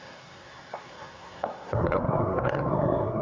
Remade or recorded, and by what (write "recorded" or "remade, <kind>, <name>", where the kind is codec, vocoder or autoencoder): remade, codec, SNAC